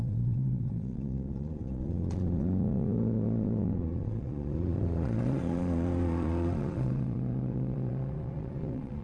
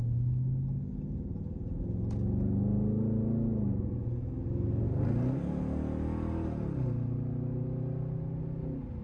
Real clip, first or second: second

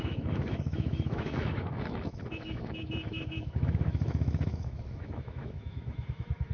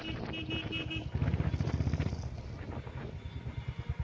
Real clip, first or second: second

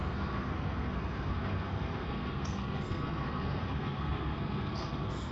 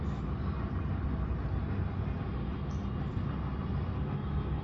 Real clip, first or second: second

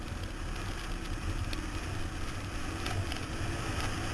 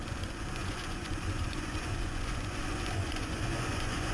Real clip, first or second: first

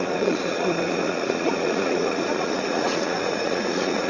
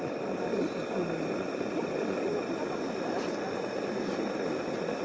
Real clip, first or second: second